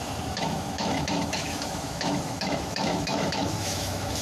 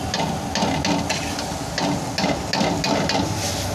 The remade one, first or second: first